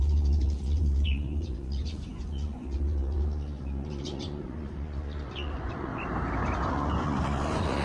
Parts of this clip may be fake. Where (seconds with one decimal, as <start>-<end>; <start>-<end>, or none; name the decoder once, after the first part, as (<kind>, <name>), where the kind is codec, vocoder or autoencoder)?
0.0-5.9 (vocoder, Vocos); 6.7-7.8

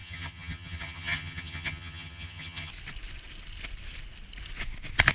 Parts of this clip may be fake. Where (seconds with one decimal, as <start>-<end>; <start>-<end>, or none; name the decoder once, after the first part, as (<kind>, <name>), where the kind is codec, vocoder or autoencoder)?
0.0-2.7 (vocoder, HiFi-GAN)

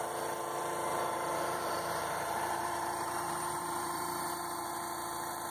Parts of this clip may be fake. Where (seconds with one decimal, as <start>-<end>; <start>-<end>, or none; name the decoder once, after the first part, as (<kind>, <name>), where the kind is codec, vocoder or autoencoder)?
0.9-4.2 (vocoder, BigVGAN v2)